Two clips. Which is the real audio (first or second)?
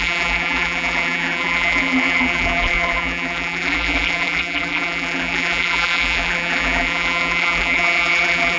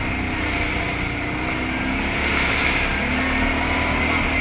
second